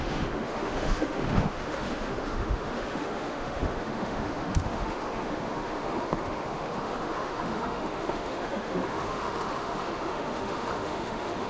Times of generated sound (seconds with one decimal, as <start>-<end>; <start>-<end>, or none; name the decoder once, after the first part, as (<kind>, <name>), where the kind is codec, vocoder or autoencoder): 0.0-11.5 (autoencoder, DAC-VAE)